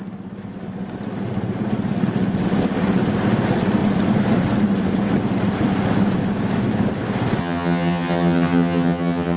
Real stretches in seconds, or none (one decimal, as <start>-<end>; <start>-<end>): 0.0-7.4